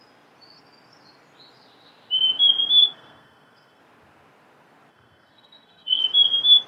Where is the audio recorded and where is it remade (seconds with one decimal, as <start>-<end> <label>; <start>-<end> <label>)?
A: 0.0-2.8 recorded; 2.8-3.8 remade; 3.8-4.9 recorded; 4.9-6.0 remade; 6.0-6.7 recorded